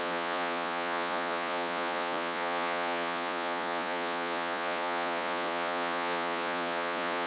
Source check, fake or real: fake